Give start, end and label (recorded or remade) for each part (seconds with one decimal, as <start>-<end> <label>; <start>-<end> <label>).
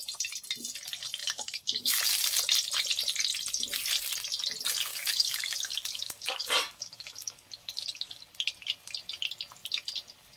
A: 0.0-1.2 recorded; 1.2-2.0 remade; 2.0-4.9 recorded; 4.9-8.2 remade; 8.2-10.4 recorded